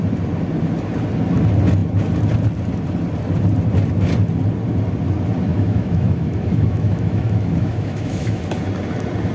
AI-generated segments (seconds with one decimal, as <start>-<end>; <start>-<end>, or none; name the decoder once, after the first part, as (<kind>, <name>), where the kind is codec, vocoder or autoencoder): 5.5-8.4 (autoencoder, DAC-VAE)

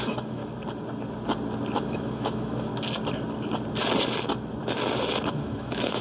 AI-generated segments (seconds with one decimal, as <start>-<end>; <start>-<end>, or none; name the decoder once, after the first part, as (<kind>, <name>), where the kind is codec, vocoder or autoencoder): 0.0-0.4 (autoencoder, DAC-VAE); 1.8-2.7; 5.3-6.0

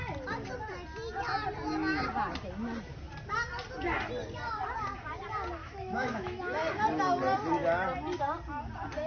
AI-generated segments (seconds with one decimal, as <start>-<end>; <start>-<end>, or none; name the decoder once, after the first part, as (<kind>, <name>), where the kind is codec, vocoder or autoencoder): 5.6-6.4 (autoencoder, DAC-VAE)

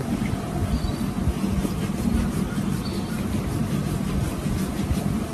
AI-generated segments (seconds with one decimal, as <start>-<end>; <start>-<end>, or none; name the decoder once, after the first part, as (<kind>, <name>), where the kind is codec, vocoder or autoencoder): none

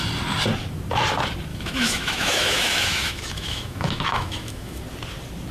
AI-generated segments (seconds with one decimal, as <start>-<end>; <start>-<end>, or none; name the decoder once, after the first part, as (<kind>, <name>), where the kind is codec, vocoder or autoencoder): 1.5-4.8 (autoencoder, DAC-VAE)

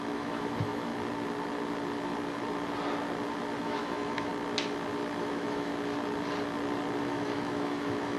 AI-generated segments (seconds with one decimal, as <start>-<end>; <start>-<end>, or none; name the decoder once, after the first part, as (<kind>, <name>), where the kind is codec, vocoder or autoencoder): 0.0-0.9 (autoencoder, DAC-VAE); 3.6-4.3; 5.2-5.7; 7.0-8.2

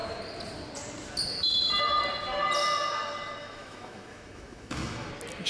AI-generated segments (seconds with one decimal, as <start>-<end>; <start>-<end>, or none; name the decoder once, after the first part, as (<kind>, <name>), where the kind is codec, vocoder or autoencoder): 3.4-5.1 (autoencoder, DAC-VAE)